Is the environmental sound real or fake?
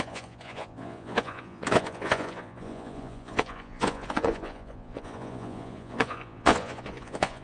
fake